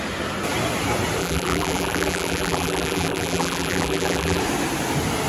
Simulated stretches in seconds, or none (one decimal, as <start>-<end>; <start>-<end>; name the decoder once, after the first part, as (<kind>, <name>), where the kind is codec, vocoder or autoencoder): 1.2-4.4 (vocoder, BigVGAN v2)